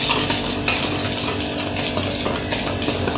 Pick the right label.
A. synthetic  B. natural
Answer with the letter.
B